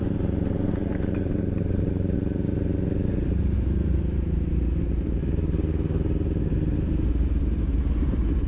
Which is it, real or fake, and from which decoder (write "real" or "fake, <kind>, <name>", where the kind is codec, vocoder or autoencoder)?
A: real